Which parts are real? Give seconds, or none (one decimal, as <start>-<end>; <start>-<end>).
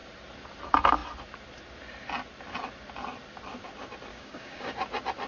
0.0-4.1; 4.7-5.3